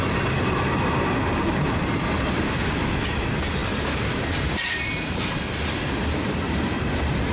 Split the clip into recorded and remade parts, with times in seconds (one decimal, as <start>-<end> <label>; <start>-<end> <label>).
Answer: 0.0-3.6 recorded; 3.6-5.3 remade; 5.3-7.3 recorded